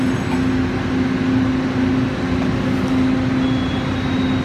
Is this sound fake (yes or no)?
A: no